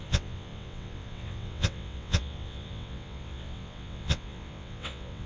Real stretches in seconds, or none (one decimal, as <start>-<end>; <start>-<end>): none